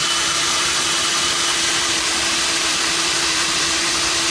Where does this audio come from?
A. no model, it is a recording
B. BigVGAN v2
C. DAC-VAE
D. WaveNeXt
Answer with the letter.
B